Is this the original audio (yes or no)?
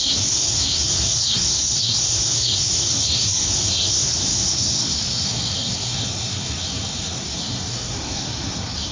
no